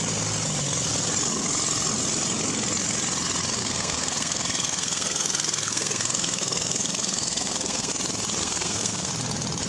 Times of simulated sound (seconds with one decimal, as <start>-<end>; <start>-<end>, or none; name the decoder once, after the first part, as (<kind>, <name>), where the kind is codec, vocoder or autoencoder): 3.6-7.9 (codec, SNAC); 8.4-9.1